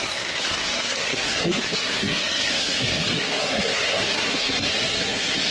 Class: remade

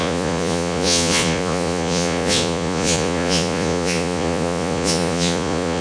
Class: remade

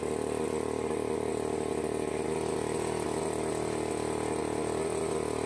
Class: recorded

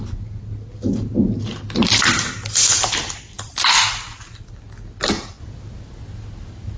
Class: recorded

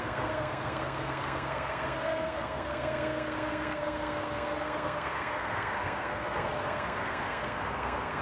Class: remade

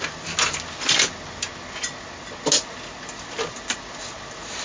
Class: recorded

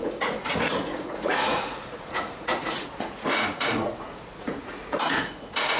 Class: remade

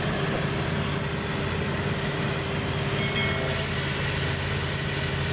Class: recorded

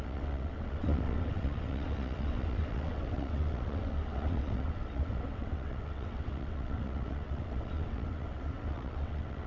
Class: remade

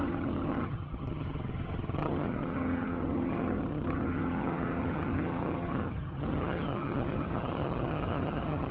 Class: remade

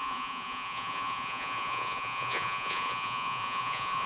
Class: remade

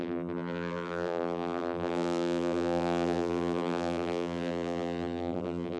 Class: remade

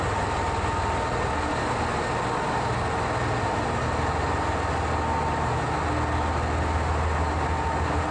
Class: recorded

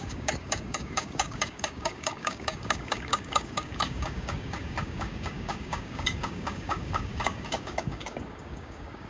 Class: remade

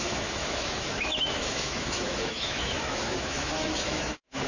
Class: remade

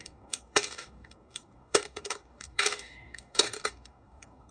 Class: remade